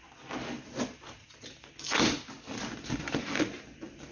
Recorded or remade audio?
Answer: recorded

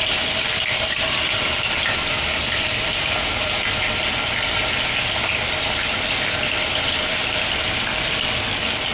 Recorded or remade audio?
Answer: recorded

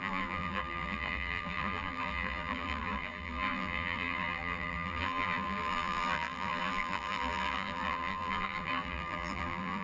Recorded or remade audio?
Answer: remade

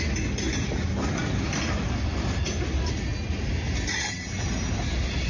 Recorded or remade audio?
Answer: recorded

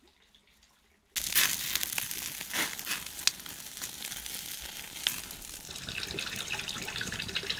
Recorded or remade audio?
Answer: recorded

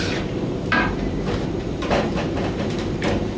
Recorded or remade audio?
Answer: remade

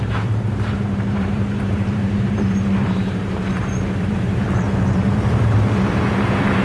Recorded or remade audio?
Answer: remade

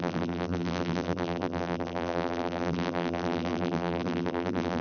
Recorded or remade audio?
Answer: remade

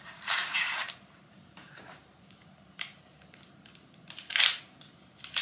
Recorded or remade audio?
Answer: remade